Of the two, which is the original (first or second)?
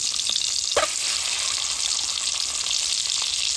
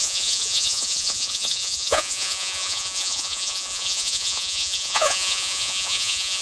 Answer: first